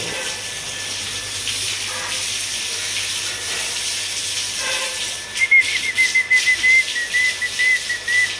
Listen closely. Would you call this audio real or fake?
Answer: real